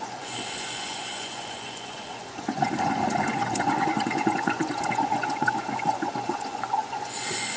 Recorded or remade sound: remade